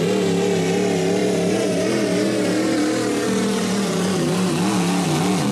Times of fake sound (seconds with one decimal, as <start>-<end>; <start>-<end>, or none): 1.2-4.5